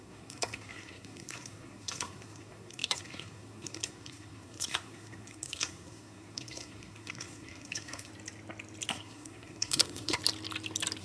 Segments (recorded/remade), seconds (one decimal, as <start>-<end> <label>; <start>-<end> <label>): 0.0-8.1 remade; 8.1-8.9 recorded; 8.9-10.2 remade; 10.2-11.0 recorded